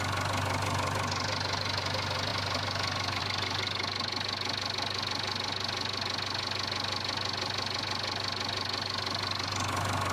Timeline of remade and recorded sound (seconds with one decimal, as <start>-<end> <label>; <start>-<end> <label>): 0.0-10.1 recorded